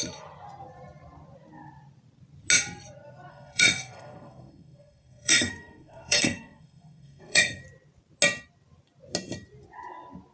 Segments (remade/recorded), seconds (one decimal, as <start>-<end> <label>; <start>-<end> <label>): 0.0-3.3 recorded; 3.3-7.6 remade; 7.6-10.3 recorded